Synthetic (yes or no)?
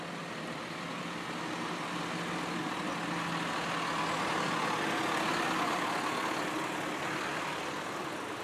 no